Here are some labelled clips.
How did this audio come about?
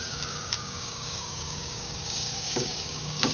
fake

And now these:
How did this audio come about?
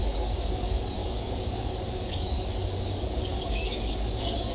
fake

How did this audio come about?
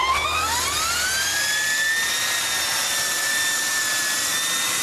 real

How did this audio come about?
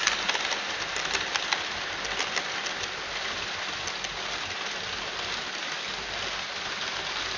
real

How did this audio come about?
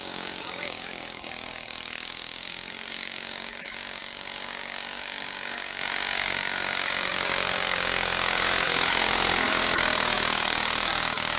fake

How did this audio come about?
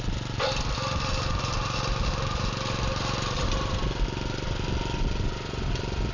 real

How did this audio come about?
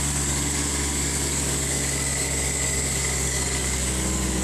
fake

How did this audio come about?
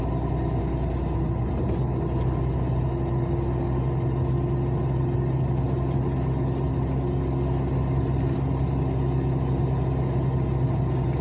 real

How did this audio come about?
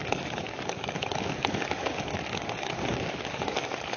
fake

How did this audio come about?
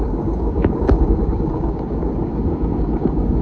fake